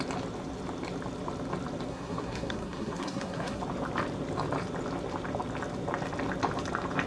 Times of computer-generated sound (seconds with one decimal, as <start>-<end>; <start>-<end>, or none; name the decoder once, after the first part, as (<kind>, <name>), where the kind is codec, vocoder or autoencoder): 1.9-3.6 (codec, SNAC)